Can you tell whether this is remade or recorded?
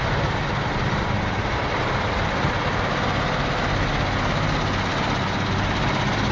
recorded